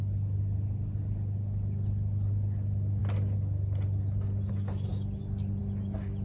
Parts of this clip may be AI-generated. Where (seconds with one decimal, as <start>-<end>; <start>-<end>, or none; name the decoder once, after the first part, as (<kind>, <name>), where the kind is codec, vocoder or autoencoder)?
none